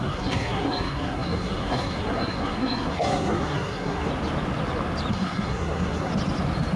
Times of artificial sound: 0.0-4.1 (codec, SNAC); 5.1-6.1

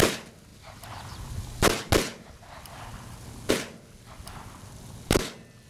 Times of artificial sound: none

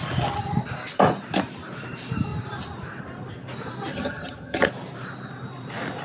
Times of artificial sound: 3.9-4.7 (vocoder, HiFi-GAN)

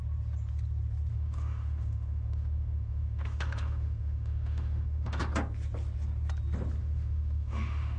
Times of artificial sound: 1.1-5.2 (autoencoder, DAC-VAE); 6.8-8.0

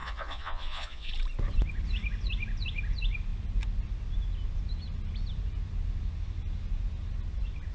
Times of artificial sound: 0.0-1.1 (vocoder, Vocos)

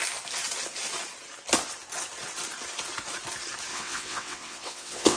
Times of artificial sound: 3.7-5.2 (vocoder, WaveNeXt)

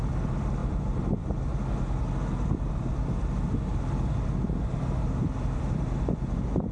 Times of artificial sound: none

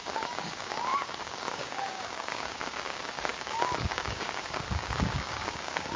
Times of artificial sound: 0.0-6.0 (codec, DAC)